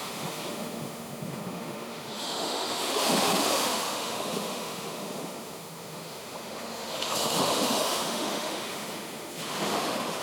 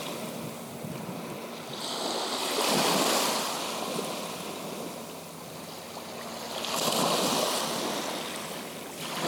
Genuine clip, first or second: second